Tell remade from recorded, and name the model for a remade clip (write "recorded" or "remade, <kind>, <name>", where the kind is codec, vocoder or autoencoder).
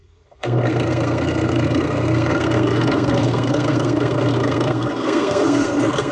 remade, codec, SNAC